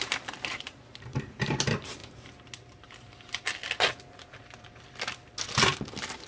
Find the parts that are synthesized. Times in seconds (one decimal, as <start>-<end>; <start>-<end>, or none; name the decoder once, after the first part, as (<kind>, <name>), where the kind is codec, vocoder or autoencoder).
0.0-2.0 (vocoder, BigVGAN v2); 5.8-6.3